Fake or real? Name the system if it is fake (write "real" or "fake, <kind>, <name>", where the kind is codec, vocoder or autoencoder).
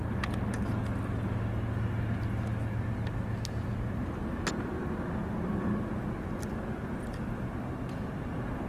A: real